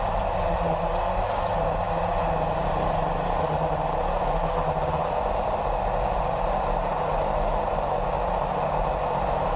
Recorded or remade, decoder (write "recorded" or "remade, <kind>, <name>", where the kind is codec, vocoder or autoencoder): recorded